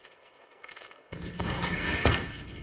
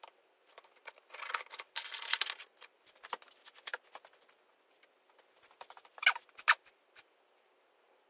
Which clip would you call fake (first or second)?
first